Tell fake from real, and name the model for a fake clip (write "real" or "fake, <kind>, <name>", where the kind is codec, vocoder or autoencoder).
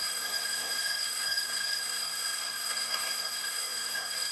fake, codec, SNAC